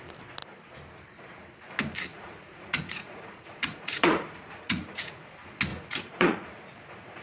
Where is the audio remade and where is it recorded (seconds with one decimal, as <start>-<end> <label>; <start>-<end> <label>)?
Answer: 0.0-2.1 recorded; 2.1-5.3 remade; 5.3-5.7 recorded; 5.7-6.6 remade; 6.6-7.2 recorded